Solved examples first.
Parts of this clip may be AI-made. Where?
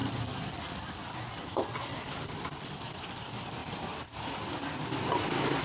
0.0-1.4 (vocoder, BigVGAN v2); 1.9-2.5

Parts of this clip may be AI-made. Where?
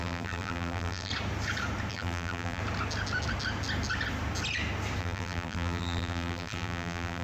0.0-1.1 (vocoder, BigVGAN v2); 1.9-2.6; 5.0-7.2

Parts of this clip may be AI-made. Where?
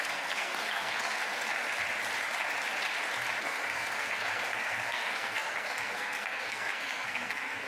0.0-1.6 (codec, SNAC); 3.4-7.7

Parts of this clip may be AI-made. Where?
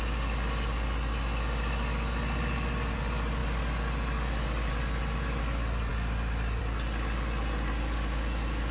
none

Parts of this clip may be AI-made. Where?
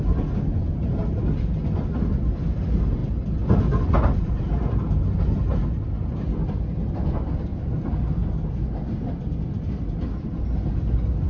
none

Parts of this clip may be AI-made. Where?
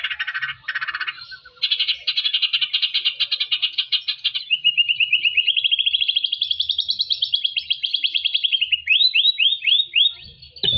0.5-1.6 (vocoder, BigVGAN v2); 4.3-9.4